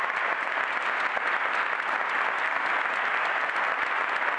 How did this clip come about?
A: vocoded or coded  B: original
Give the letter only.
B